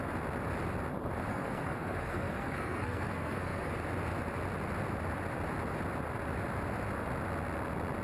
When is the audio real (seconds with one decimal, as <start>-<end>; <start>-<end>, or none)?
0.0-1.3; 3.7-8.0